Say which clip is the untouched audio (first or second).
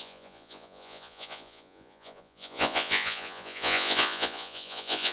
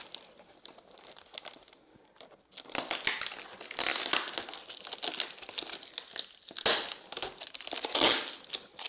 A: second